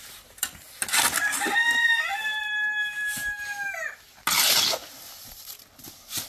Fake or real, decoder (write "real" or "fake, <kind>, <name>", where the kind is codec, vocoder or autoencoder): real